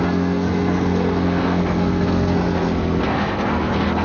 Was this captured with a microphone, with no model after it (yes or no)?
no